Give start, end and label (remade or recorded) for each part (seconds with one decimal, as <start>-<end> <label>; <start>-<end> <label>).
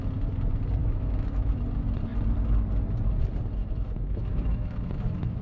0.0-0.8 recorded; 0.8-1.6 remade; 1.6-3.6 recorded; 3.6-5.4 remade